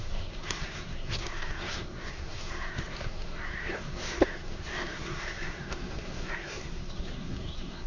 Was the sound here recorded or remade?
remade